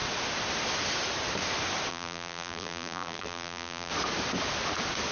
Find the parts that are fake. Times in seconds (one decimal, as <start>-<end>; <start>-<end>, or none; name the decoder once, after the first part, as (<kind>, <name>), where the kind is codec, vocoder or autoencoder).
1.9-3.9 (vocoder, BigVGAN v2)

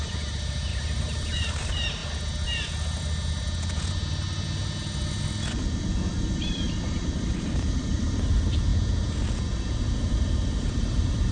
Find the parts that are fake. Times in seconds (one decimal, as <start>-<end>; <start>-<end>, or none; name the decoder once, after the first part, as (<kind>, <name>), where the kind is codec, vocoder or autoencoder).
0.0-2.0 (vocoder, BigVGAN v2); 7.1-8.7; 10.0-11.3

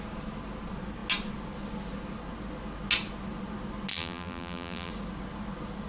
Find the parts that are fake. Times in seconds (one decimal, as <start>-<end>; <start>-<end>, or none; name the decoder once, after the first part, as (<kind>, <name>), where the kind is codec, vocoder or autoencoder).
3.9-4.9 (vocoder, BigVGAN v2)

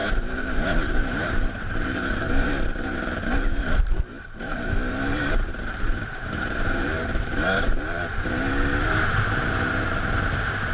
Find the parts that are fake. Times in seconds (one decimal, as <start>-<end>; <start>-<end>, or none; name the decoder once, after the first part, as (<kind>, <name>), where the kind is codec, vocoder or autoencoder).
0.0-10.7 (vocoder, BigVGAN v2)

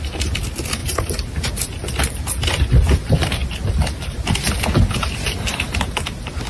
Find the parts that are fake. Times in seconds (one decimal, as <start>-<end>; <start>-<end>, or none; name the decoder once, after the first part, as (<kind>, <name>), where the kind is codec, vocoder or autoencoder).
0.8-1.5 (vocoder, BigVGAN v2)

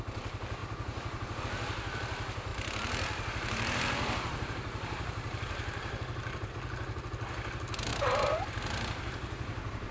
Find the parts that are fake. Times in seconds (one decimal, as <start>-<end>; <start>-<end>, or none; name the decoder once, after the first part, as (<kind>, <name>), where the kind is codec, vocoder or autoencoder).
0.6-1.4 (vocoder, BigVGAN v2); 2.5-6.5; 7.9-9.9

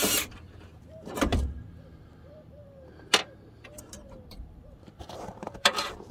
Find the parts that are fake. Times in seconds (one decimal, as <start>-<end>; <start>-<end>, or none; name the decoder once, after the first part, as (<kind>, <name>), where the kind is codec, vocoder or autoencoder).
0.0-2.6 (vocoder, BigVGAN v2); 3.8-6.1

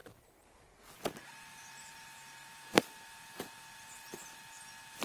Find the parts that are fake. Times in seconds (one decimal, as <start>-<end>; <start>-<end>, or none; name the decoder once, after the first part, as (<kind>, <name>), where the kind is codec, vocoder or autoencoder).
0.0-0.6 (vocoder, BigVGAN v2); 1.5-4.5